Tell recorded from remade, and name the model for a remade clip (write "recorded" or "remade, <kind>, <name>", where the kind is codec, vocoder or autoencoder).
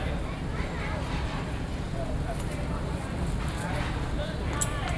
recorded